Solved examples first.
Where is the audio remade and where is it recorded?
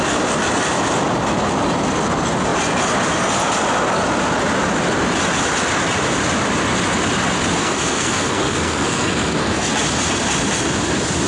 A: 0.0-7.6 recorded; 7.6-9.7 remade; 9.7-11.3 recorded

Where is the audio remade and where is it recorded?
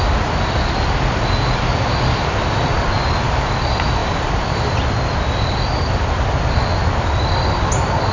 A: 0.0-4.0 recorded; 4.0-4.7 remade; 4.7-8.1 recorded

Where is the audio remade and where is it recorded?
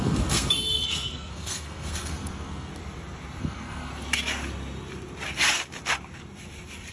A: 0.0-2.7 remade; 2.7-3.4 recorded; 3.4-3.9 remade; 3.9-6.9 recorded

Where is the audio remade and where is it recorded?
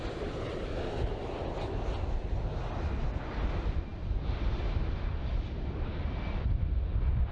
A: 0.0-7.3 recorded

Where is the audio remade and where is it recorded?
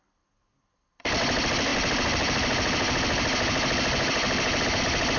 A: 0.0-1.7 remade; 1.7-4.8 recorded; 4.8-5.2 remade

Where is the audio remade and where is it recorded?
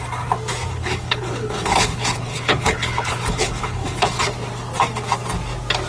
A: 0.0-0.7 recorded; 0.7-4.2 remade; 4.2-5.9 recorded